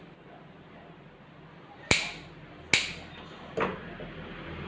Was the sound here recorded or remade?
recorded